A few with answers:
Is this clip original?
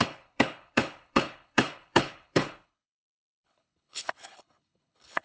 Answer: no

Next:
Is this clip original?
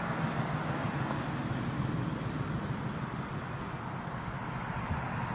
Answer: yes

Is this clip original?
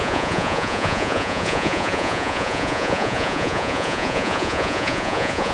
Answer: no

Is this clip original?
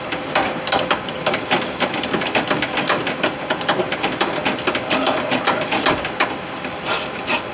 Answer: yes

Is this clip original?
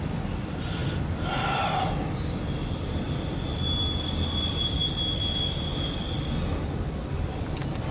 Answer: yes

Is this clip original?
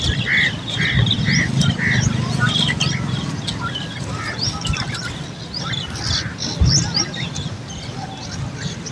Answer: yes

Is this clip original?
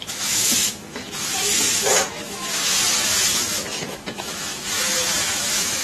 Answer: no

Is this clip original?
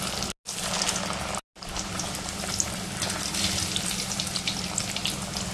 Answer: yes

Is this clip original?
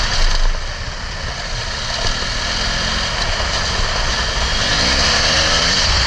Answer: yes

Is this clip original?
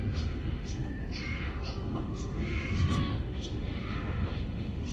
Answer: no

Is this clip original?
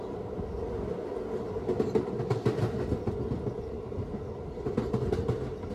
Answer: yes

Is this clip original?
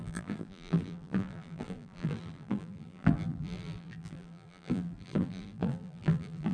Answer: no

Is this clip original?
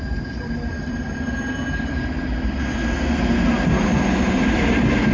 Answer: yes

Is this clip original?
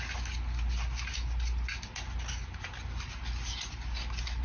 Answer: yes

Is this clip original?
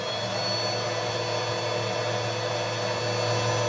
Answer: yes